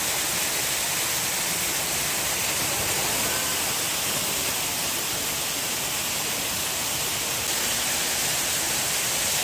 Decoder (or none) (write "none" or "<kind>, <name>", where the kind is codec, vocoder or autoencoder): none